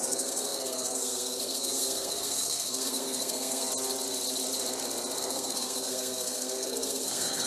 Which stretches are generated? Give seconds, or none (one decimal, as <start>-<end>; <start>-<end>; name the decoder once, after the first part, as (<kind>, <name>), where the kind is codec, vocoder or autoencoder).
0.0-3.7 (codec, SNAC); 5.2-7.5